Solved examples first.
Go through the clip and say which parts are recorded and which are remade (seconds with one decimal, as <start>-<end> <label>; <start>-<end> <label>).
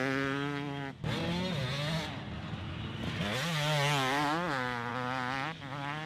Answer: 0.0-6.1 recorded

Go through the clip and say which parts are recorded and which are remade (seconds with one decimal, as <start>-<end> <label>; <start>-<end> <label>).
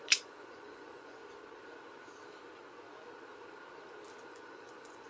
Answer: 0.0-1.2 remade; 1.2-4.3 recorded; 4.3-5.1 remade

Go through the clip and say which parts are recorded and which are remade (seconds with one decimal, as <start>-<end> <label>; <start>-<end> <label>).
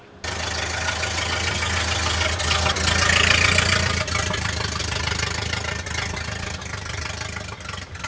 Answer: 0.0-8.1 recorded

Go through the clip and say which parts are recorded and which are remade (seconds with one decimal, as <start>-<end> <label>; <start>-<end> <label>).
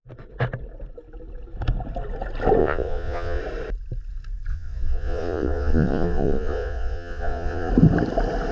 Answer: 0.0-2.6 recorded; 2.6-3.4 remade; 3.4-4.5 recorded; 4.5-7.7 remade; 7.7-8.5 recorded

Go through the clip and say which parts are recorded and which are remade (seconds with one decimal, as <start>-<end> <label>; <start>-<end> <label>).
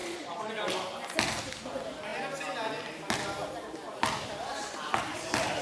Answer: 0.0-0.5 remade; 0.5-5.6 recorded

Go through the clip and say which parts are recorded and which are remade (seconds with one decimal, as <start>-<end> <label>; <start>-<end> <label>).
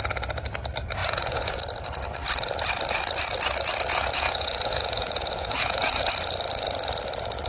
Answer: 0.0-1.0 recorded; 1.0-1.6 remade; 1.6-3.9 recorded; 3.9-6.1 remade; 6.1-7.5 recorded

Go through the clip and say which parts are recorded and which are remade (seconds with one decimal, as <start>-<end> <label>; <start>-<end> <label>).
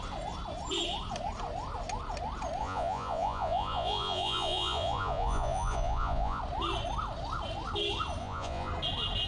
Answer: 0.0-2.6 recorded; 2.6-6.4 remade; 6.4-8.2 recorded; 8.2-8.7 remade; 8.7-9.3 recorded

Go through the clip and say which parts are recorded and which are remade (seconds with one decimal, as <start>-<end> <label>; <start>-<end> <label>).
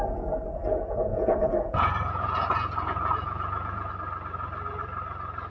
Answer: 0.0-1.1 recorded; 1.1-3.9 remade; 3.9-5.5 recorded